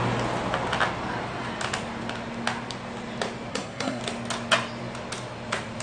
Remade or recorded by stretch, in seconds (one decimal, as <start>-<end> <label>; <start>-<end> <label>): 0.0-3.5 recorded; 3.5-4.0 remade; 4.0-5.8 recorded